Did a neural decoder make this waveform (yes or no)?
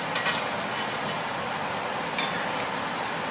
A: no